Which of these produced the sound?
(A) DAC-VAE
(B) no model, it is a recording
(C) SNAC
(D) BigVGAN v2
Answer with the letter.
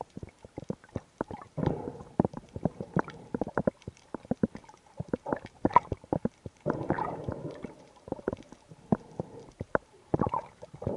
D